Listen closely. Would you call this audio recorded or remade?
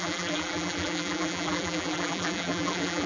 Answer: remade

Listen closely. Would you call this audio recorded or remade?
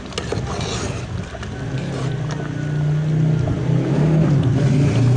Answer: recorded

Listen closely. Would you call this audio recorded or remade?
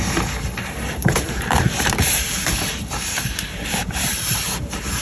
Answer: remade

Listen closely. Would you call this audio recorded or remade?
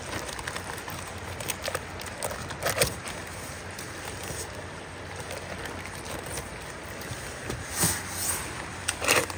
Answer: recorded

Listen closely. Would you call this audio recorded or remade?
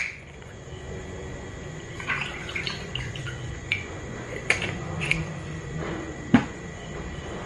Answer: remade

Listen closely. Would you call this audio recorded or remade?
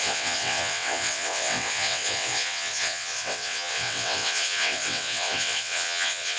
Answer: remade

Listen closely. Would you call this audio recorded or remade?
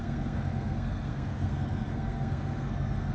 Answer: remade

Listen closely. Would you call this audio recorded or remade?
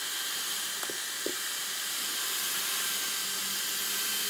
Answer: recorded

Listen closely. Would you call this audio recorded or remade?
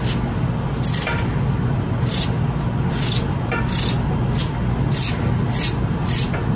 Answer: recorded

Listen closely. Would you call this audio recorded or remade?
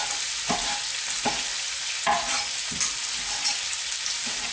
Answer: recorded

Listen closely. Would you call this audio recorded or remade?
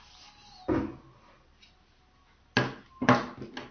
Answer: recorded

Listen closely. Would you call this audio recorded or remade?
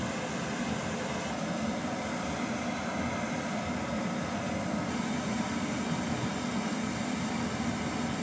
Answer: recorded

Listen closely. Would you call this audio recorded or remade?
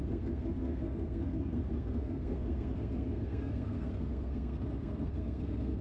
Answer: remade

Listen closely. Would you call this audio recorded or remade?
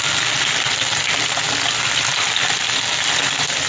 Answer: recorded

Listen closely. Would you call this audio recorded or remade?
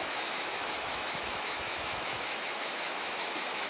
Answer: remade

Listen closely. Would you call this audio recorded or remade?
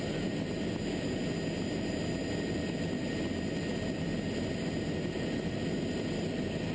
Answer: recorded